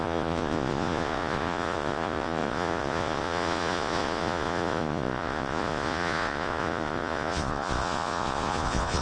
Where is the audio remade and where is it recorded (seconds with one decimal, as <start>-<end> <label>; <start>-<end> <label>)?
0.0-9.0 remade